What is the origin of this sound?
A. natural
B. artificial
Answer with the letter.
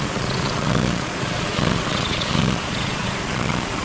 B